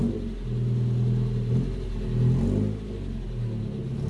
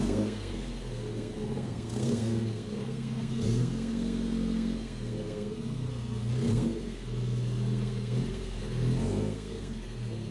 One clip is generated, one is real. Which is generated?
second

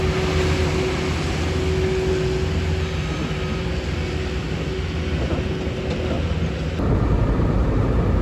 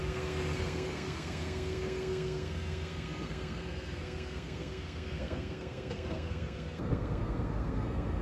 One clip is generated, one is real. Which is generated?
second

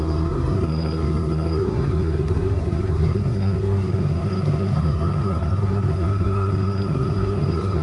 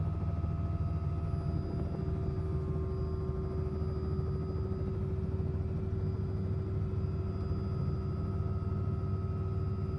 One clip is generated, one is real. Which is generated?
first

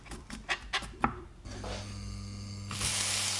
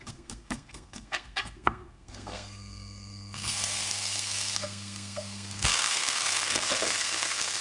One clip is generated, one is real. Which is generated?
second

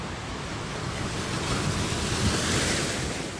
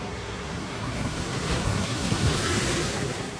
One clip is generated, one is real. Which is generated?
second